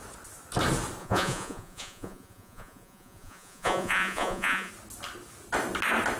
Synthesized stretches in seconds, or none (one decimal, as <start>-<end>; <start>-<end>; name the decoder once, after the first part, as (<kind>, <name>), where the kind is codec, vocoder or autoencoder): 1.0-4.7 (vocoder, Vocos)